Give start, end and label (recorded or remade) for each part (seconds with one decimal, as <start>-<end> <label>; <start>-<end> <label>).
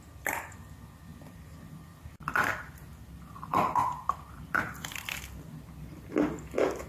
0.0-1.1 recorded; 1.1-5.2 remade; 5.2-6.9 recorded